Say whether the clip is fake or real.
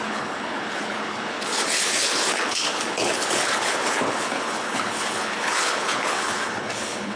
fake